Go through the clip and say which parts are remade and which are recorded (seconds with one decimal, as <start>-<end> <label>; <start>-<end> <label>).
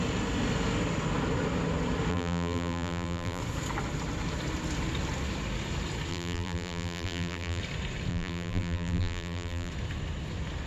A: 0.0-2.1 recorded; 2.1-3.4 remade; 3.4-6.1 recorded; 6.1-7.6 remade; 7.6-8.1 recorded; 8.1-9.7 remade; 9.7-10.7 recorded